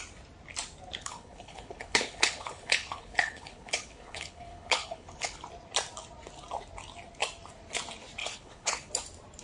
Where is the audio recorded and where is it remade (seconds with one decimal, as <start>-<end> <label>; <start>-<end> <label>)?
0.0-1.0 recorded; 1.0-5.4 remade; 5.4-8.2 recorded; 8.2-8.9 remade; 8.9-9.4 recorded